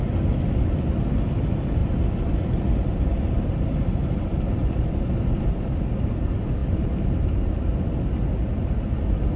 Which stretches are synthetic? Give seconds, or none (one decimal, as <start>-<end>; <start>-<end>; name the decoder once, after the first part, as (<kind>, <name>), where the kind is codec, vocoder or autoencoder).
none

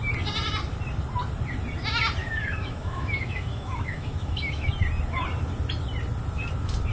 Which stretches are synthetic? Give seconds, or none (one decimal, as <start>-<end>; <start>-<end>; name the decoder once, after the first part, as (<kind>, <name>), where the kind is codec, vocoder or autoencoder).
2.2-4.7 (autoencoder, DAC-VAE)

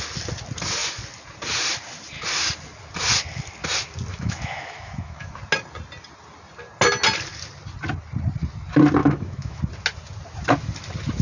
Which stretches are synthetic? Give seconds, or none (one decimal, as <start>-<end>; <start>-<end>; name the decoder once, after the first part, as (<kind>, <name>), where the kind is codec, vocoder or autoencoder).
4.1-5.3 (autoencoder, DAC-VAE); 9.0-9.6

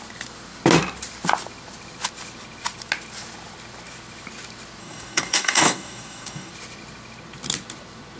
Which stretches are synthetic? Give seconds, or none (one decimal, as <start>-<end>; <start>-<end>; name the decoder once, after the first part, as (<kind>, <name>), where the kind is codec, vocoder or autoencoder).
4.8-6.5 (codec, DAC)

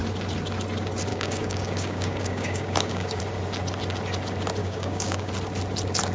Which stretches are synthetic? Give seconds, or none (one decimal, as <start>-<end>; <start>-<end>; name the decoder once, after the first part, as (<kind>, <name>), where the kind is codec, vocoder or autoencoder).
1.1-3.2 (codec, DAC); 4.6-5.3

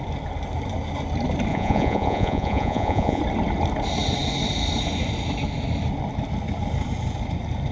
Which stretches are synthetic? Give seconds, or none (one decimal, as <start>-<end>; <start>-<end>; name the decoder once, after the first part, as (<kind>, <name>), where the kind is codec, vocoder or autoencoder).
1.5-3.2 (vocoder, Vocos)